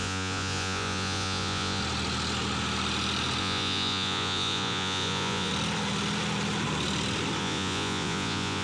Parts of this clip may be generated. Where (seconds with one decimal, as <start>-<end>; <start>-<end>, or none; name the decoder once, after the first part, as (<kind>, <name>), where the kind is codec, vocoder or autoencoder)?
0.0-1.8 (vocoder, Vocos); 3.4-5.5; 7.4-8.6